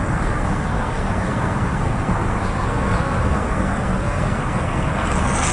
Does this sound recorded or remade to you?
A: remade